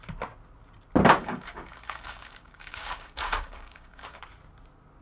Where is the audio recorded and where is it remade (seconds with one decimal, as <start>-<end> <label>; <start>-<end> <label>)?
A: 0.0-1.2 recorded; 1.2-4.2 remade; 4.2-5.0 recorded